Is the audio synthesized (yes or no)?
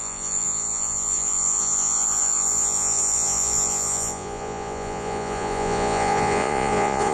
yes